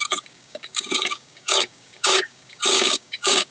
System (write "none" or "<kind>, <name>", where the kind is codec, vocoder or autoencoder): codec, DAC